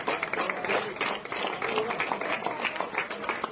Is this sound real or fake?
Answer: real